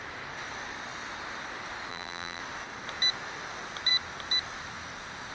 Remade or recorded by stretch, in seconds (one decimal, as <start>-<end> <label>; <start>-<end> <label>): 0.0-1.9 recorded; 1.9-2.4 remade; 2.4-5.3 recorded